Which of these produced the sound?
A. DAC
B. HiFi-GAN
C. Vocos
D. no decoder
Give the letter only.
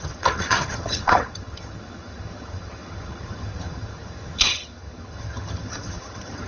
B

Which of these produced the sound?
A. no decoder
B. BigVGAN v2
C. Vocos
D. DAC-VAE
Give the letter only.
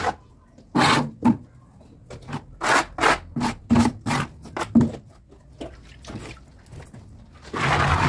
A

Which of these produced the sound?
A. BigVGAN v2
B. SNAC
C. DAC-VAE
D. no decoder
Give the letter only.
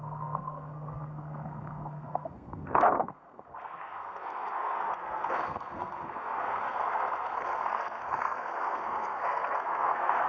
B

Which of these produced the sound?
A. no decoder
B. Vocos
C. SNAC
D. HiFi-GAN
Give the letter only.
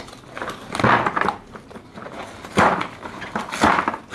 A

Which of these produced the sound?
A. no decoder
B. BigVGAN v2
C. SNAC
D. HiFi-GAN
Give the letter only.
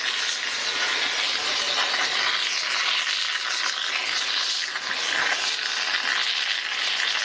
A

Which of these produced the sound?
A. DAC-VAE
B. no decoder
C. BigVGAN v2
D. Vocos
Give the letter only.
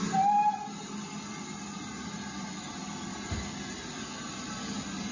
B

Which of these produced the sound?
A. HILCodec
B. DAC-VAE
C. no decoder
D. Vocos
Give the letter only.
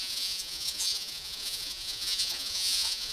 D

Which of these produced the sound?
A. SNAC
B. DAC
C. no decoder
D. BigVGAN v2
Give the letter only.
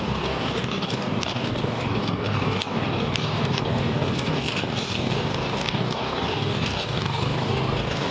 B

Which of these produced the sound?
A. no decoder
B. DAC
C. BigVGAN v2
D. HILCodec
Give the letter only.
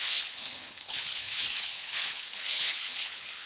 D